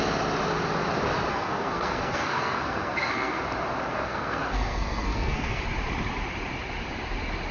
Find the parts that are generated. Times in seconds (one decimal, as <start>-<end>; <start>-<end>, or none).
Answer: 1.3-3.4; 3.9-5.6